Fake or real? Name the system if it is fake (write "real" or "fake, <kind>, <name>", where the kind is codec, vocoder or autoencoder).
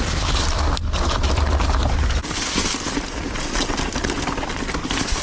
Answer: real